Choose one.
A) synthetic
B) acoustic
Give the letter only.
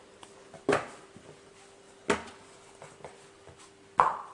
B